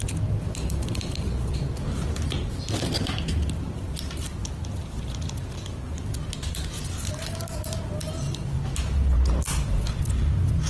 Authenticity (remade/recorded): recorded